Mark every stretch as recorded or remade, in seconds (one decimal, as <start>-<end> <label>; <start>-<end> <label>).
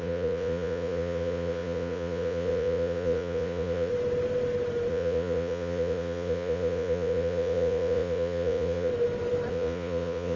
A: 0.0-3.9 remade; 3.9-4.9 recorded; 4.9-8.9 remade; 8.9-9.5 recorded; 9.5-10.4 remade